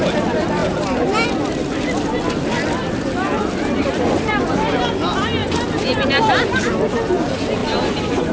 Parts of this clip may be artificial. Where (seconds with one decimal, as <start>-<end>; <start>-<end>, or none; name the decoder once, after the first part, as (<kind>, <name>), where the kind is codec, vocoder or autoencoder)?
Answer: none